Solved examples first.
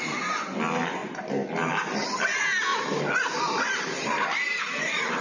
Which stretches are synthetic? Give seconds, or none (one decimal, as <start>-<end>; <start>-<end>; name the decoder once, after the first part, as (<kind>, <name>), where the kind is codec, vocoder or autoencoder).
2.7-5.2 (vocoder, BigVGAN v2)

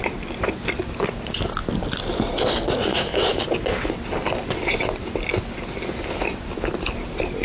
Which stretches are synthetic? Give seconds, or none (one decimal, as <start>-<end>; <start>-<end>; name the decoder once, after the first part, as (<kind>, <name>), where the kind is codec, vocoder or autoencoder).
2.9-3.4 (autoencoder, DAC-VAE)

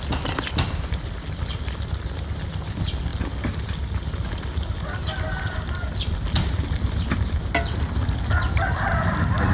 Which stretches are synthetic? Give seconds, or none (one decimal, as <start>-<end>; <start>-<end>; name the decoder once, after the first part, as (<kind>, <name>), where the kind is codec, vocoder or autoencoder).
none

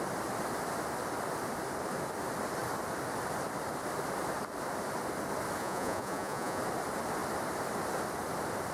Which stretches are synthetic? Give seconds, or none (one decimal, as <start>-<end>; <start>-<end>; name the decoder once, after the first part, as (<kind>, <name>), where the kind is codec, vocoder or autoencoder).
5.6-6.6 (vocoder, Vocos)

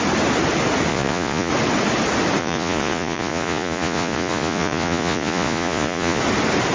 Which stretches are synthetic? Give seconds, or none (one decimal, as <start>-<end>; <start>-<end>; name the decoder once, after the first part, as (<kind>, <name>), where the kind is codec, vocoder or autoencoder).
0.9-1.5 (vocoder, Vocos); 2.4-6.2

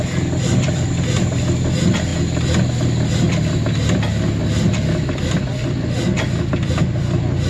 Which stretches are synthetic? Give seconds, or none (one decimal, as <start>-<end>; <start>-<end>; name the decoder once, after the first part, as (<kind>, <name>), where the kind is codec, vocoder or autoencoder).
none

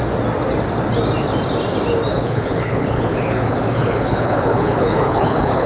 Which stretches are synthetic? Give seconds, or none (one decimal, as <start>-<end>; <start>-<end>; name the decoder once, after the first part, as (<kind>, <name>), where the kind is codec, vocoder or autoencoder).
2.1-5.7 (codec, HILCodec)

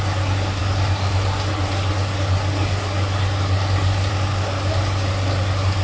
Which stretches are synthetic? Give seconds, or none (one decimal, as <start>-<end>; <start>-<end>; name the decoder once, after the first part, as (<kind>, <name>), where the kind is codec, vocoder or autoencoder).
none